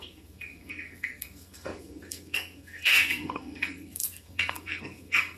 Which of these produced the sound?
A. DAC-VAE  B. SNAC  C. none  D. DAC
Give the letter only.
B